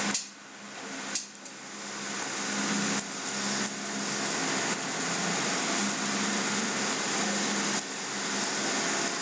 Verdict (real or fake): real